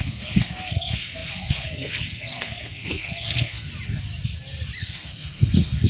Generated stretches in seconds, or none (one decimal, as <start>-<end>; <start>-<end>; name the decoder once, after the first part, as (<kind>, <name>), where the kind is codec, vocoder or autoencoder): 0.0-3.7 (codec, SNAC); 4.8-5.9